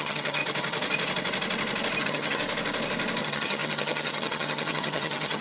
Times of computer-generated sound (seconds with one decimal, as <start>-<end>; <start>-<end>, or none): 0.0-0.4; 2.0-2.4; 3.2-5.4